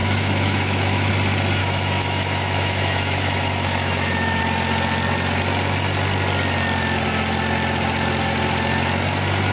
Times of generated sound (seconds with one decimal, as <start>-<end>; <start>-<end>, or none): 0.0-1.1; 1.6-4.4